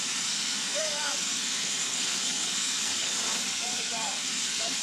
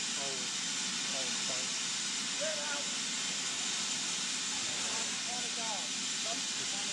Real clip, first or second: second